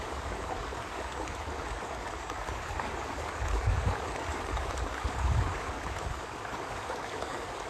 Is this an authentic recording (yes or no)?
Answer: no